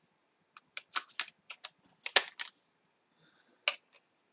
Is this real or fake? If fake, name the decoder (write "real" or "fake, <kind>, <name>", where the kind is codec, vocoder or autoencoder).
real